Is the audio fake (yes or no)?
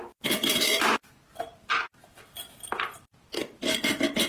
no